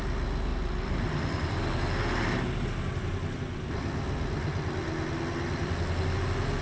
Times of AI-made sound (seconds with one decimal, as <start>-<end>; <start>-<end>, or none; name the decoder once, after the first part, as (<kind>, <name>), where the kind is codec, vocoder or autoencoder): 0.5-1.6 (vocoder, BigVGAN v2)